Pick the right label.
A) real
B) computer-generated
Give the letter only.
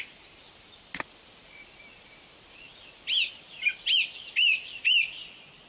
A